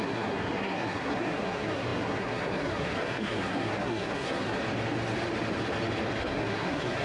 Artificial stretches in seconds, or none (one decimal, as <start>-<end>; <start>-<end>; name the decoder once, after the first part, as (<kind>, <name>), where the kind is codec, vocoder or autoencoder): 0.0-4.6 (codec, SNAC); 6.2-7.0